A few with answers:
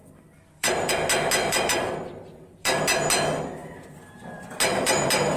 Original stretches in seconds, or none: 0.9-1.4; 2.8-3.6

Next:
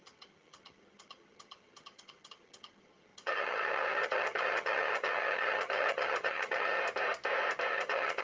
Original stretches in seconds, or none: 6.8-7.7